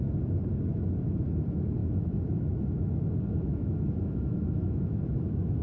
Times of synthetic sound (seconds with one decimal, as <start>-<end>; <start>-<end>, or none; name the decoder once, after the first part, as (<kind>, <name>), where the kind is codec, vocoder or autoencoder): 1.8-5.6 (autoencoder, DAC-VAE)